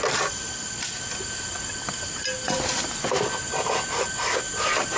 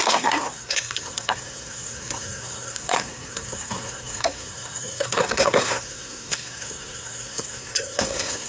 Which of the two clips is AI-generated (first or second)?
second